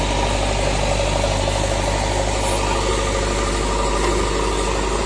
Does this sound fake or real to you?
real